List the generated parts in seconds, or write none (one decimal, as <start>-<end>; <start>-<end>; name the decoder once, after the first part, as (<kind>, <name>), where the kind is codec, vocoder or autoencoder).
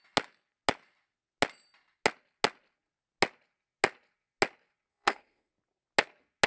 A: 4.9-5.5 (codec, SNAC)